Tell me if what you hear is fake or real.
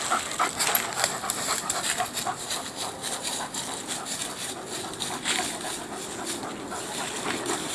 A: real